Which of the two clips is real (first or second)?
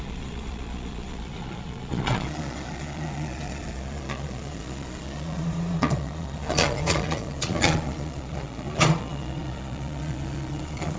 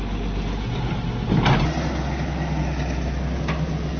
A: second